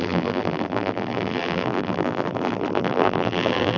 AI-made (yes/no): yes